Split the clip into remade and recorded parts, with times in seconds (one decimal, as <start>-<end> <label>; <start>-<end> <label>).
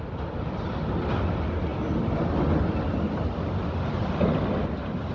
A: 0.0-5.1 recorded